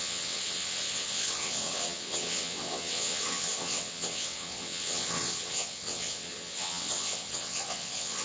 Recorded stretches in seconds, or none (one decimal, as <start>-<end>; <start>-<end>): none